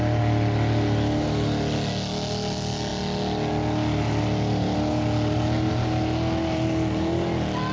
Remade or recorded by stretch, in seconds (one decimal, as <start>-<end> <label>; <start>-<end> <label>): 0.0-7.7 recorded